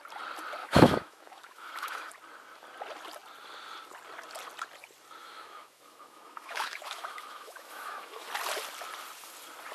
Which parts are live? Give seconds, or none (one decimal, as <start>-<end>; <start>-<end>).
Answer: 0.0-0.6; 2.1-5.2; 8.3-9.7